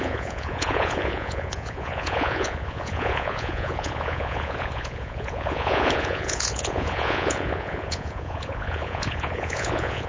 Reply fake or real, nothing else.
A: fake